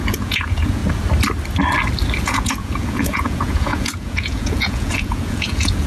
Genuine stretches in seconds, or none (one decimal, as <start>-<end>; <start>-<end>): 0.8-2.2